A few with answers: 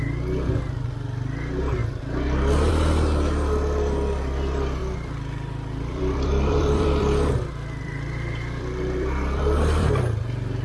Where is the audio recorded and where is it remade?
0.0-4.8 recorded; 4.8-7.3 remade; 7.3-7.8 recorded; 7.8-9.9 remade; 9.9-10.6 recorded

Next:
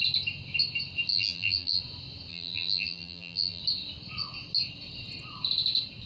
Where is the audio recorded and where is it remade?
0.0-1.1 recorded; 1.1-1.8 remade; 1.8-2.3 recorded; 2.3-3.6 remade; 3.6-6.1 recorded

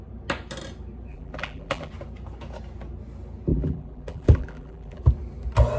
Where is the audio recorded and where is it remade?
0.0-1.1 recorded; 1.1-1.9 remade; 1.9-3.5 recorded; 3.5-5.0 remade; 5.0-5.8 recorded

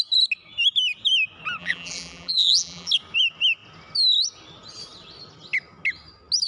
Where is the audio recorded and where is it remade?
0.0-1.6 recorded; 1.6-2.9 remade; 2.9-6.5 recorded

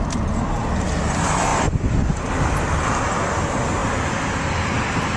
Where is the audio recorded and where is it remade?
0.0-1.5 recorded; 1.5-2.1 remade; 2.1-5.2 recorded

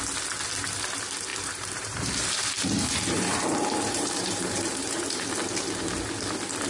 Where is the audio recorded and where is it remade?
0.0-1.3 recorded; 1.3-5.3 remade; 5.3-6.7 recorded

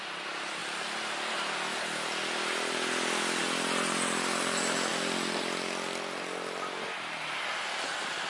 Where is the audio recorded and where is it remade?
0.0-8.3 recorded